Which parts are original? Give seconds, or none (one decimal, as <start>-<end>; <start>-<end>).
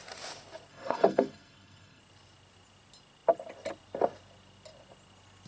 0.0-0.7; 2.0-5.5